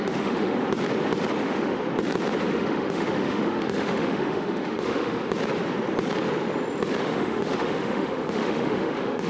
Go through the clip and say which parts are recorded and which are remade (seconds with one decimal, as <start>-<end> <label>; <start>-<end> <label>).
0.0-0.6 remade; 0.6-1.4 recorded; 1.4-1.8 remade; 1.8-2.5 recorded; 2.5-5.2 remade; 5.2-7.0 recorded; 7.0-9.3 remade